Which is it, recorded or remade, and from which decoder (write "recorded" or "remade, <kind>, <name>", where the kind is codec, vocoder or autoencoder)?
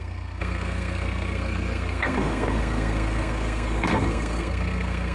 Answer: remade, codec, SNAC